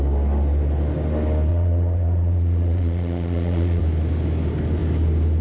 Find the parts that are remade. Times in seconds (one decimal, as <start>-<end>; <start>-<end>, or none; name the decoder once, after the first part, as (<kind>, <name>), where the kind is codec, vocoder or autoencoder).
1.5-3.8 (vocoder, Vocos)